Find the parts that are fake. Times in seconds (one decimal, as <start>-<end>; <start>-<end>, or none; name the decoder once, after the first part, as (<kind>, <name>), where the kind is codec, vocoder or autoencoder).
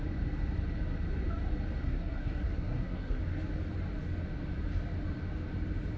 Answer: 1.8-3.2 (codec, SNAC)